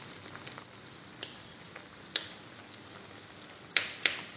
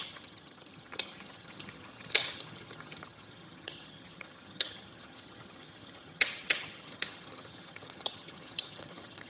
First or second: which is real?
first